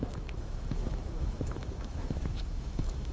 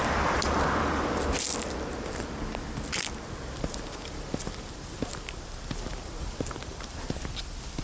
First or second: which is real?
second